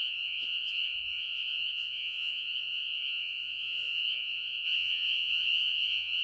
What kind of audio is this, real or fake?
fake